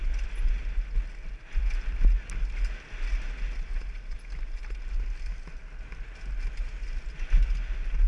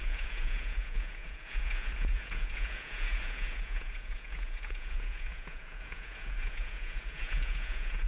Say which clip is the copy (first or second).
second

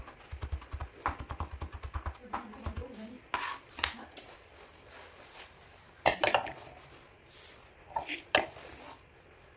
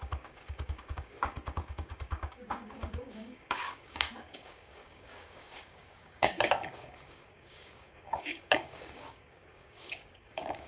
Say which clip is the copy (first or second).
second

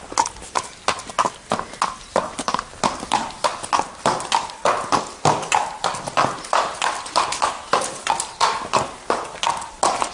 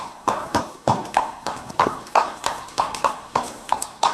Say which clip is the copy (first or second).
second